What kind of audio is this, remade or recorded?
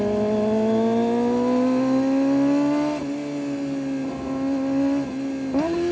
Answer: recorded